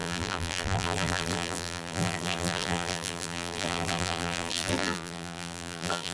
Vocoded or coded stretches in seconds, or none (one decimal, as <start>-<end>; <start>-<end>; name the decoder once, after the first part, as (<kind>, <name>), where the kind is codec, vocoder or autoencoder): 0.0-6.1 (vocoder, BigVGAN v2)